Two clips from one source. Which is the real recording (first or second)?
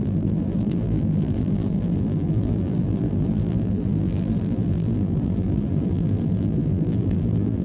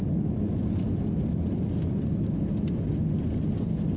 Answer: second